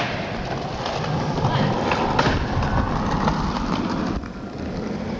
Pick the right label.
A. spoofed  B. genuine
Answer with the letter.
A